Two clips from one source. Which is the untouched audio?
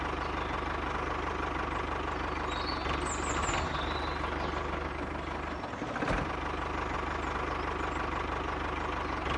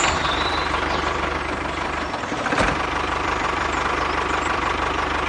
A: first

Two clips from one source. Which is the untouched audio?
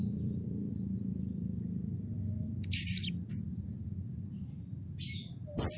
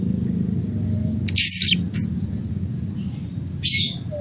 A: second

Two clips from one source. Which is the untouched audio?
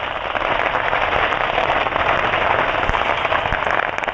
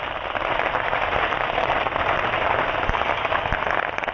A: first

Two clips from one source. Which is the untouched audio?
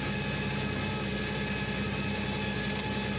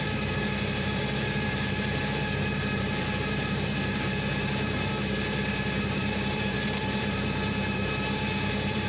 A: first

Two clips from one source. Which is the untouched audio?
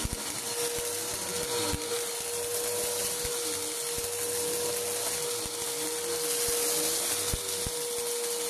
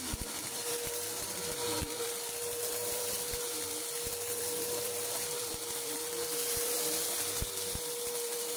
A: first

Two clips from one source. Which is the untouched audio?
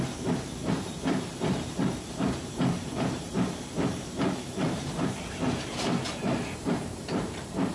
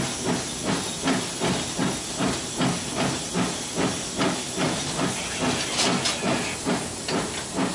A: second